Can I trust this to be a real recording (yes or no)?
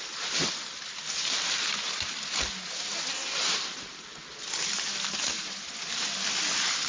yes